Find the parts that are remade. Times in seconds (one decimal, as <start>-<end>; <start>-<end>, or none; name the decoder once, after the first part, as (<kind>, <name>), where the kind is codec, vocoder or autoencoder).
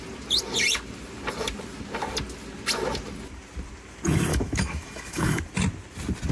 4.3-5.4 (autoencoder, DAC-VAE)